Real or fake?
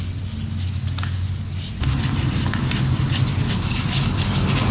real